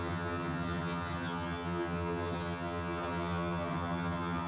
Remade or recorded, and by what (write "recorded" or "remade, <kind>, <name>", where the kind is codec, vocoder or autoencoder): remade, vocoder, HiFi-GAN